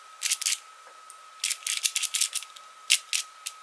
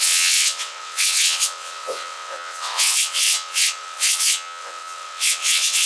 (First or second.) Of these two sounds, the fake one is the second